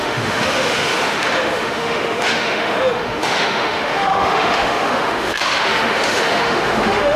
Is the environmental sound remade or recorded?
remade